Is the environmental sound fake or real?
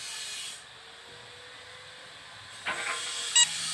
real